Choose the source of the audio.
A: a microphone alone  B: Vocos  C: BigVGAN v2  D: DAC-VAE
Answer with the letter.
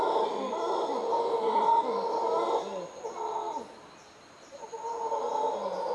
A